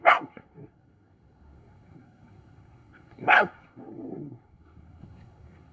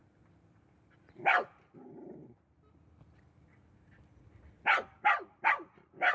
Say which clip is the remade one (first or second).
first